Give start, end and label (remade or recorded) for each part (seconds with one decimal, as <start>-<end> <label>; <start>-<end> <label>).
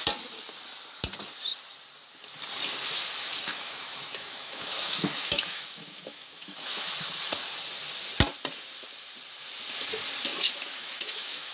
0.0-3.5 recorded; 3.5-6.9 remade; 6.9-10.3 recorded; 10.3-11.5 remade